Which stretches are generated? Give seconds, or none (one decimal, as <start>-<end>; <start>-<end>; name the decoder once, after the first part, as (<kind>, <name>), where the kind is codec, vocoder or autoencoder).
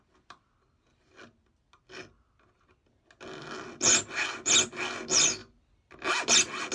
none